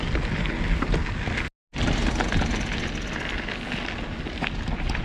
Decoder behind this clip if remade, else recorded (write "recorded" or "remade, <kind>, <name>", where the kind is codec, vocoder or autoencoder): recorded